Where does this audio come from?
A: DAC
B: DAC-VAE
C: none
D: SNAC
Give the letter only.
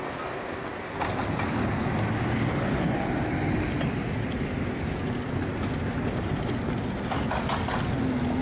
C